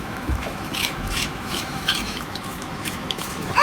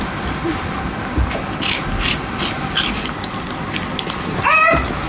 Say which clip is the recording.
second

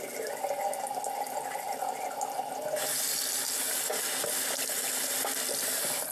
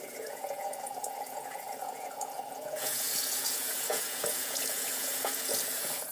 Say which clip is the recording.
first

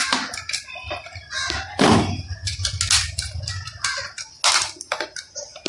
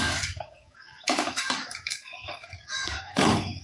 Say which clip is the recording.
first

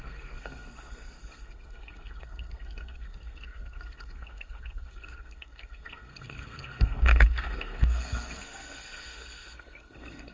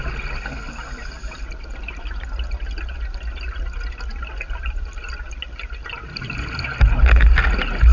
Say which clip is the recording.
second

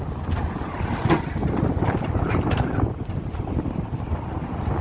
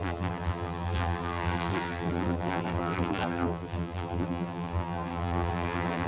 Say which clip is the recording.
first